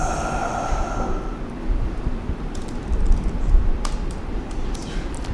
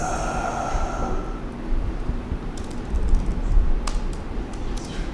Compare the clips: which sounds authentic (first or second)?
second